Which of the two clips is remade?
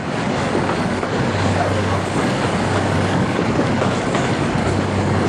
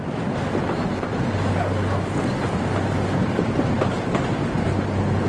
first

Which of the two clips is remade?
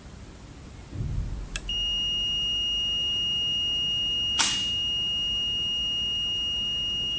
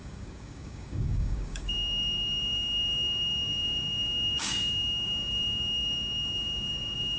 second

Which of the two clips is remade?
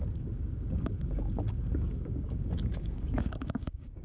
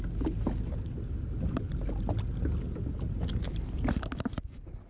first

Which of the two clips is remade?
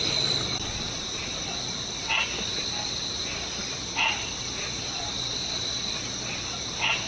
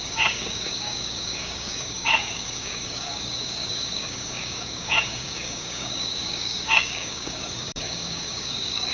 second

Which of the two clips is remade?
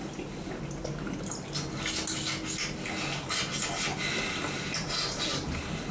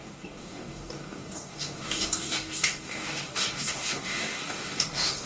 second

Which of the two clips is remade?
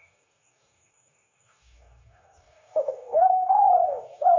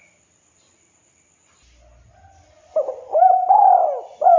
first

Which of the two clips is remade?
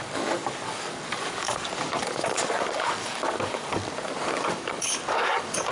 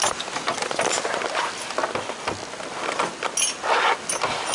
first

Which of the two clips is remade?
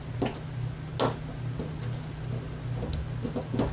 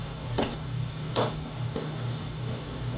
second